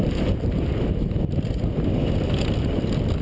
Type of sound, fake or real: real